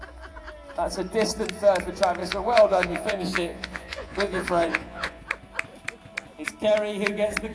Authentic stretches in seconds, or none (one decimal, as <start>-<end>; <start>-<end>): 0.0-2.2; 5.2-7.5